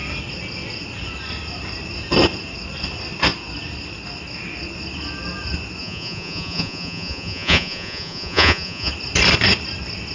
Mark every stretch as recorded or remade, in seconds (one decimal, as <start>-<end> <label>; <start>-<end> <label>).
0.0-5.8 recorded; 5.8-8.9 remade; 8.9-10.1 recorded